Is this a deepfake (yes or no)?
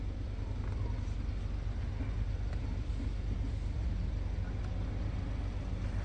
no